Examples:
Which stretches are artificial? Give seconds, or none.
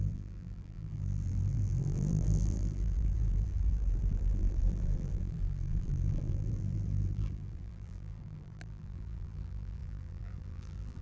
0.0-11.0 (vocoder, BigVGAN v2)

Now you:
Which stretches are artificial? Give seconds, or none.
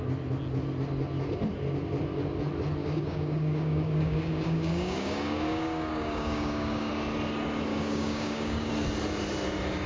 2.8-6.9 (codec, DAC); 7.7-8.7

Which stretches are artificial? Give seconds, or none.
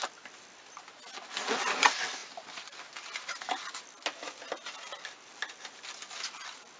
none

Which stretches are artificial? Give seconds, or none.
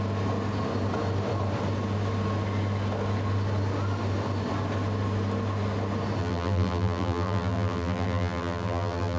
6.2-9.2 (vocoder, BigVGAN v2)